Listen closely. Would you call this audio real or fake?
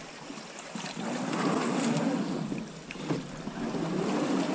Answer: real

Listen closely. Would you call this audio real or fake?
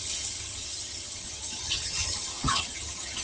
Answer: fake